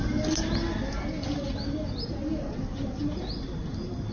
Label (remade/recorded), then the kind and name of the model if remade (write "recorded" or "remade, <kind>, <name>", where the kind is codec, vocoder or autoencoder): recorded